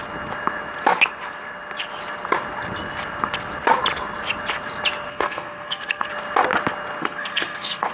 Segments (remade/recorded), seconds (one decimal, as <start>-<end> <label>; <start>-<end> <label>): 0.0-5.1 recorded; 5.1-6.1 remade; 6.1-7.0 recorded; 7.0-7.9 remade